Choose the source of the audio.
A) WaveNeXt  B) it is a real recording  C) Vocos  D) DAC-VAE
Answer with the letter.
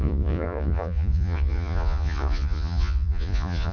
C